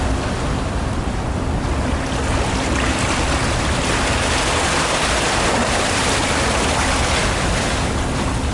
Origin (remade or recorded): recorded